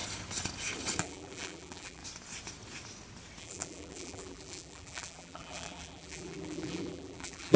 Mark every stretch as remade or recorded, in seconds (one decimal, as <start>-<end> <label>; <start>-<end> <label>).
0.0-1.0 recorded; 1.0-2.0 remade; 2.0-3.4 recorded; 3.4-7.6 remade